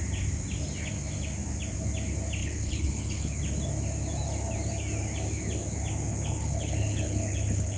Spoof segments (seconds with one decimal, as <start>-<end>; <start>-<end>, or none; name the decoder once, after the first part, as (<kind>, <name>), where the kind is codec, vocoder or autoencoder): 2.4-3.4 (codec, HILCodec); 6.1-7.8